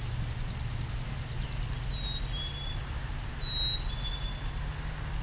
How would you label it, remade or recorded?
recorded